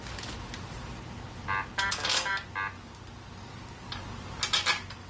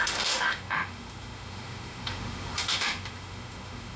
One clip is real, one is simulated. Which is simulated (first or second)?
second